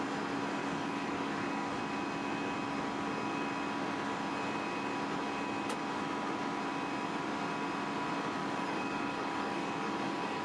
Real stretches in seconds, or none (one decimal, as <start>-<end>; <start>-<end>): 0.0-0.6; 1.8-8.4